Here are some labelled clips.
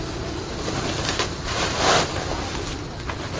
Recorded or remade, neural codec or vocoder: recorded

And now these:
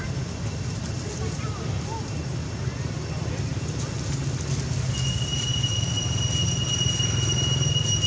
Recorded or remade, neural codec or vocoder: recorded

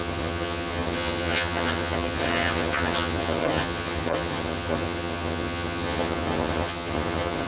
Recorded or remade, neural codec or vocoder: remade, vocoder, HiFi-GAN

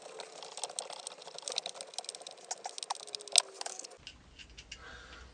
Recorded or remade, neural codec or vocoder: recorded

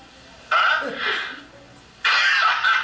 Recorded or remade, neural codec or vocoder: recorded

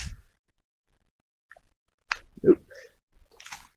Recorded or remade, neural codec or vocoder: recorded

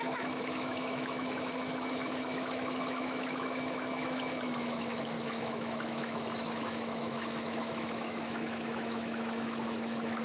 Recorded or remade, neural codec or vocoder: remade, autoencoder, DAC-VAE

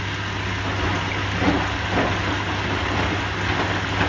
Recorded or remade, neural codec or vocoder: recorded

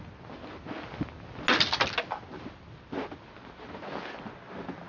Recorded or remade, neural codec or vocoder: recorded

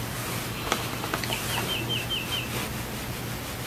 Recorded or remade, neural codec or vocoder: recorded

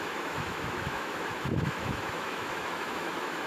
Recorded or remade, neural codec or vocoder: remade, autoencoder, DAC-VAE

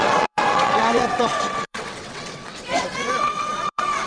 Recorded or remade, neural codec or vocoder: remade, vocoder, WaveNeXt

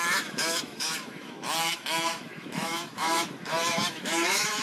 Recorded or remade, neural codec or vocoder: remade, autoencoder, DAC-VAE